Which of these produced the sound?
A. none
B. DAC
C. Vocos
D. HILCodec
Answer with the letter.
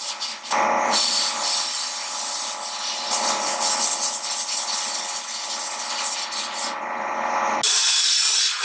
A